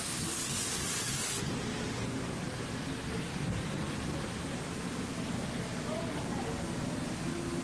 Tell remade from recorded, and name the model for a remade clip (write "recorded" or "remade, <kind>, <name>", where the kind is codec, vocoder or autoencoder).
recorded